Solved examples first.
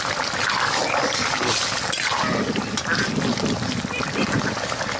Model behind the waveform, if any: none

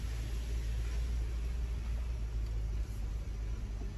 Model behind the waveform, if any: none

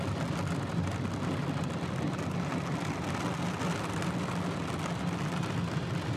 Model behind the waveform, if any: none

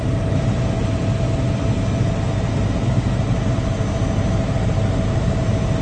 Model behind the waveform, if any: none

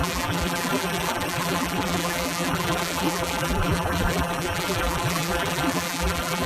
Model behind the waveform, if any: vocoder, BigVGAN v2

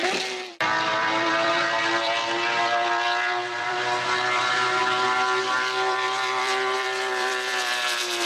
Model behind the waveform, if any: vocoder, BigVGAN v2